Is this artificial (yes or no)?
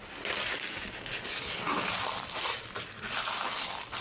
no